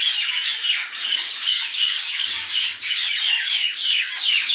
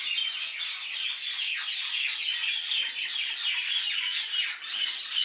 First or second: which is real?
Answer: second